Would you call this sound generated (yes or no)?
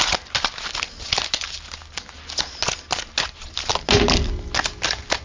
no